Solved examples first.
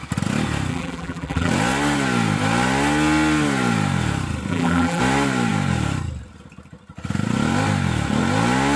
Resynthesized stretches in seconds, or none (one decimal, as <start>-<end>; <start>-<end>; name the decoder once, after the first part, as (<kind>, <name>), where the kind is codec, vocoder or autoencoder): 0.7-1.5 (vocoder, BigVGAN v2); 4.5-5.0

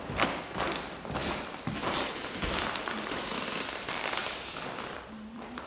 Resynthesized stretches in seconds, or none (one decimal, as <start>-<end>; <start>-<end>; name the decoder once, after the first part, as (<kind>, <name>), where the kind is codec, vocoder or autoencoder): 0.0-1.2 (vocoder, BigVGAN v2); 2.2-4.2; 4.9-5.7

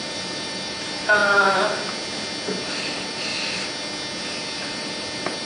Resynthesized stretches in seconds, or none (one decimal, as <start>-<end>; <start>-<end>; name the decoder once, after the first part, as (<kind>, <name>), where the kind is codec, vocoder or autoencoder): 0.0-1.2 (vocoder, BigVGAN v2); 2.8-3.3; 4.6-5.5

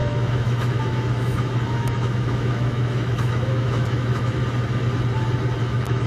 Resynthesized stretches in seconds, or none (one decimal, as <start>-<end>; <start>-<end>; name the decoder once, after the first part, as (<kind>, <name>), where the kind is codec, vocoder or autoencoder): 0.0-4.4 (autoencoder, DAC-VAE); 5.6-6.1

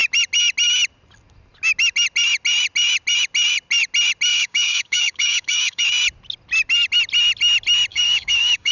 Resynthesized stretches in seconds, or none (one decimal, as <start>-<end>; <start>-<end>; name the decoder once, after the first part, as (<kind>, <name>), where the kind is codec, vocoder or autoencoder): 4.3-5.8 (codec, DAC); 7.9-8.7